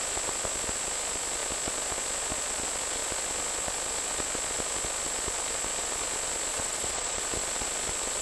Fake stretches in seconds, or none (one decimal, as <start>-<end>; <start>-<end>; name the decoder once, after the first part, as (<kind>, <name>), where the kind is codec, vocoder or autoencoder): 6.5-7.2 (vocoder, Vocos)